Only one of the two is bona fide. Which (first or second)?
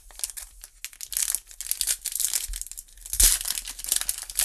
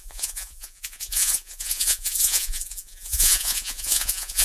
first